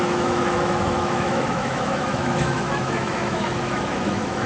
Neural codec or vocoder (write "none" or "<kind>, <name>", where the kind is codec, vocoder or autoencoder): autoencoder, DAC-VAE